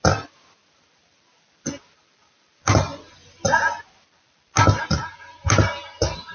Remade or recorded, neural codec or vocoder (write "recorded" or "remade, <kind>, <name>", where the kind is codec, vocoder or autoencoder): recorded